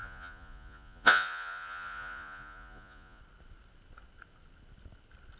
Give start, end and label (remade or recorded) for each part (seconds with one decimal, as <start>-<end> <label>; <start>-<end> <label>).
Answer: 0.0-3.2 remade; 3.2-5.4 recorded